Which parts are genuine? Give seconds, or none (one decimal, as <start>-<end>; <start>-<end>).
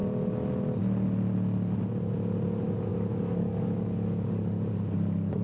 0.0-2.9; 4.7-5.4